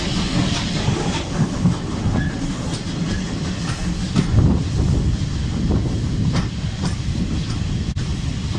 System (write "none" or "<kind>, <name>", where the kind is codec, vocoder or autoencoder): none